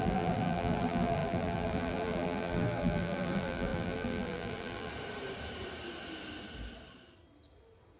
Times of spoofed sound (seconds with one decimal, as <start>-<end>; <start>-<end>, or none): 0.0-4.9